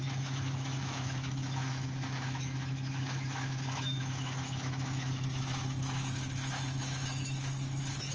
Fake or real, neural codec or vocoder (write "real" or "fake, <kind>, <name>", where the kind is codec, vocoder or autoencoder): fake, autoencoder, DAC-VAE